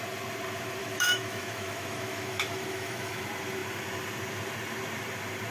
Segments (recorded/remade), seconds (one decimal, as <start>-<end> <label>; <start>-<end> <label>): 0.0-0.8 recorded; 0.8-3.2 remade; 3.2-5.5 recorded